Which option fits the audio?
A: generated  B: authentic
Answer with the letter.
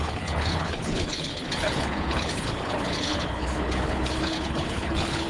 A